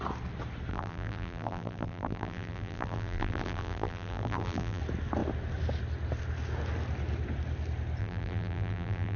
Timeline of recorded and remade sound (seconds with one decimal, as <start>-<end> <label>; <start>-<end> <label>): 0.0-0.7 recorded; 0.7-4.8 remade; 4.8-8.0 recorded; 8.0-9.2 remade